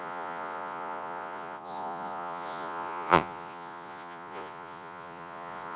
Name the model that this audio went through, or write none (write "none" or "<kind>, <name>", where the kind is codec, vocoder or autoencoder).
vocoder, Vocos